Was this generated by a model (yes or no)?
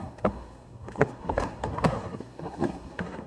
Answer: yes